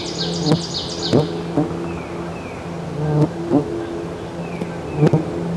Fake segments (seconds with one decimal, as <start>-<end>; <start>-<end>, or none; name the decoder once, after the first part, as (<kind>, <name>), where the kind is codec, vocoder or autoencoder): none